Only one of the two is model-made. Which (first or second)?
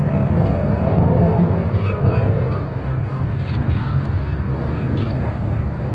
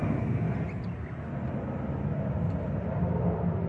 first